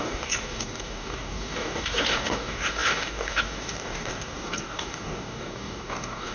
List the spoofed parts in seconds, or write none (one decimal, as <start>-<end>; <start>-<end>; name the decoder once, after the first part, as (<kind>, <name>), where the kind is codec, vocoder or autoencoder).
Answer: 0.0-6.3 (codec, DAC)